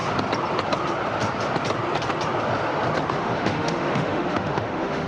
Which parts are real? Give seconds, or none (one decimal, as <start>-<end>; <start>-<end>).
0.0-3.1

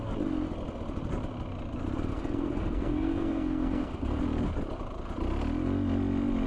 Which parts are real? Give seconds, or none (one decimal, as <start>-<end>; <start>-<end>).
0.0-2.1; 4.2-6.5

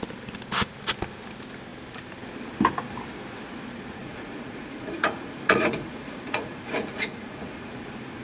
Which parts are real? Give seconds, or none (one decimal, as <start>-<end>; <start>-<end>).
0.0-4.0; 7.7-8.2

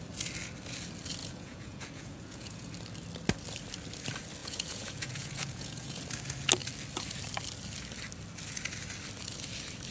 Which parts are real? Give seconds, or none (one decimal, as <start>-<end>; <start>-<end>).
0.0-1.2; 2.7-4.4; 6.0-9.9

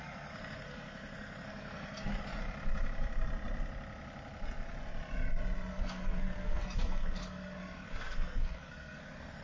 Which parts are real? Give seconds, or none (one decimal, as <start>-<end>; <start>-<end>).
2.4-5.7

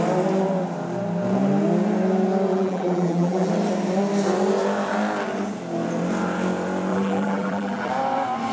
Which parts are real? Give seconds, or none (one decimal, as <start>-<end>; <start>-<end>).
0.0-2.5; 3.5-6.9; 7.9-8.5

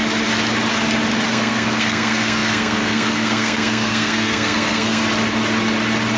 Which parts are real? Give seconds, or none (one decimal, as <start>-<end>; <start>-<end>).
0.0-1.3; 5.0-6.2